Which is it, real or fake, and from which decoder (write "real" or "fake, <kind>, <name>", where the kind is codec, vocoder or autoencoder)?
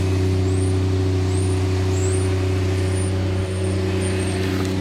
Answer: real